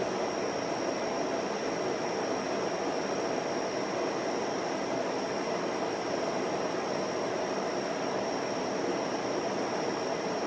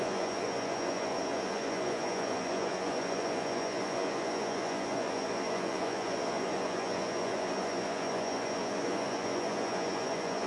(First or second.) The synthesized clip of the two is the second